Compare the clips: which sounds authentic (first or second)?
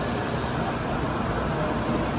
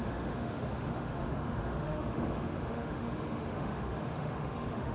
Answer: first